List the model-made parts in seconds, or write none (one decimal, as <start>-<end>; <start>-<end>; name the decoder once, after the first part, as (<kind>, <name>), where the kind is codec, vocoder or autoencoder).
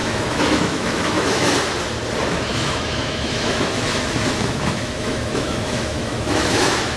0.0-1.5 (autoencoder, DAC-VAE); 2.5-7.0